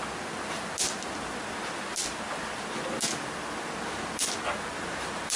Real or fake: real